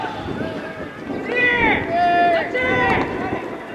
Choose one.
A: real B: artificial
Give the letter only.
A